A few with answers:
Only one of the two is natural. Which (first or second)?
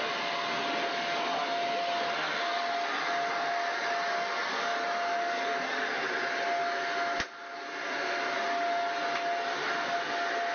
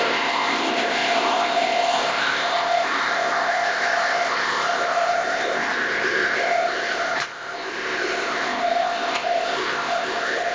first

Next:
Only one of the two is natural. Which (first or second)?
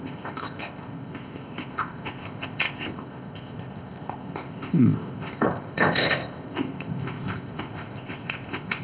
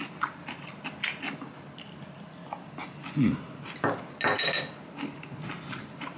second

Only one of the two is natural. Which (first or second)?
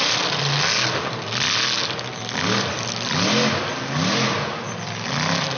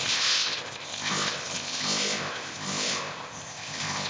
first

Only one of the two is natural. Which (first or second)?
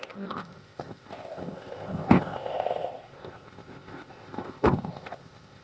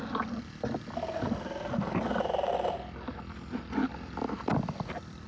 second